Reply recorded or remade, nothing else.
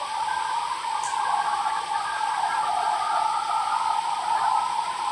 recorded